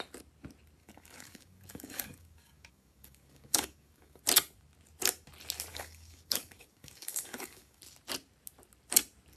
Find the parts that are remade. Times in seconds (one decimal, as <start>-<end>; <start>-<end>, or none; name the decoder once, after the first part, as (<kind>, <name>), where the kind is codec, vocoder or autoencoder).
0.8-4.2 (codec, DAC); 5.7-7.8